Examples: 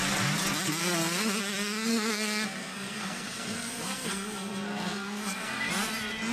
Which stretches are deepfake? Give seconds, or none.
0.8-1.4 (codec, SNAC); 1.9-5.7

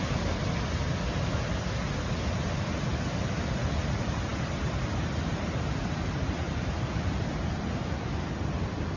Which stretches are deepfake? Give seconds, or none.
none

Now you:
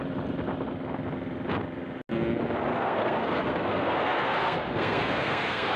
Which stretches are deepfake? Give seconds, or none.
2.7-5.8 (codec, SNAC)